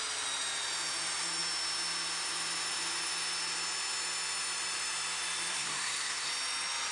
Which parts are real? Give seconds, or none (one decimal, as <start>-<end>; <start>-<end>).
0.0-5.5; 6.3-6.9